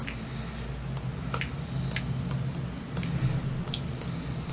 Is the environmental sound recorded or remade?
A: recorded